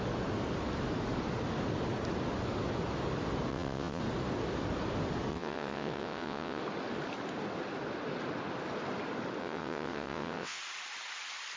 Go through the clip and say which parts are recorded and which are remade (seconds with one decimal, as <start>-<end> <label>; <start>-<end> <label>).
0.0-3.5 recorded; 3.5-4.0 remade; 4.0-5.3 recorded; 5.3-6.6 remade; 6.6-9.4 recorded; 9.4-10.6 remade; 10.6-11.6 recorded